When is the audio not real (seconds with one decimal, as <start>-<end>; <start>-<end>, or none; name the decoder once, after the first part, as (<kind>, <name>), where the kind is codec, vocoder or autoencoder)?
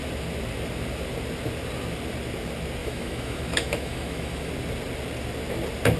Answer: 2.8-4.5 (autoencoder, DAC-VAE)